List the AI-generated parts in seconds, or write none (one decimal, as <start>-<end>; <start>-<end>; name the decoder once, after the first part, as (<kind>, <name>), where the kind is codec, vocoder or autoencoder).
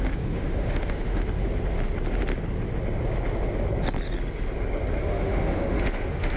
0.0-1.2 (autoencoder, DAC-VAE); 5.0-6.4